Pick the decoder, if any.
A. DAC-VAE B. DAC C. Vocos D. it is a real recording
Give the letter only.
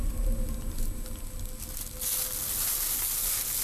D